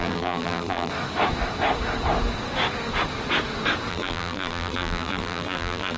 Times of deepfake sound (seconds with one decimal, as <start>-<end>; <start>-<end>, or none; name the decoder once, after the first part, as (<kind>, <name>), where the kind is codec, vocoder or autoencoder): 0.0-0.9 (vocoder, BigVGAN v2); 3.9-6.0